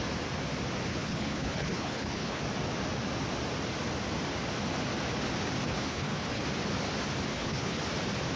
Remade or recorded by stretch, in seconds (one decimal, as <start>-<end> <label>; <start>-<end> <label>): 0.0-0.9 recorded; 0.9-2.4 remade; 2.4-5.7 recorded; 5.7-6.4 remade; 6.4-7.3 recorded; 7.3-7.8 remade; 7.8-8.4 recorded